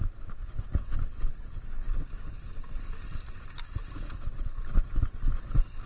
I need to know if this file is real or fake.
real